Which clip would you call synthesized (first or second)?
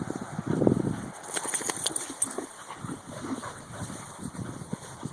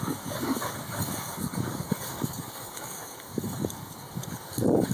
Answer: second